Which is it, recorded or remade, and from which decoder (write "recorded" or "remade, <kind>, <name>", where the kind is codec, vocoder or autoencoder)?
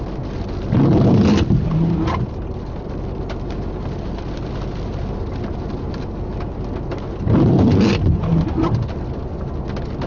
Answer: recorded